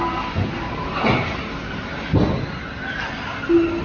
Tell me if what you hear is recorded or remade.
recorded